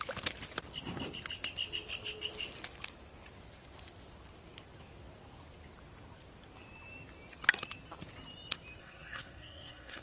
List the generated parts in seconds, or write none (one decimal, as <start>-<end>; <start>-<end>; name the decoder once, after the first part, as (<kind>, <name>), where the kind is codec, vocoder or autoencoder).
8.8-10.0 (codec, SNAC)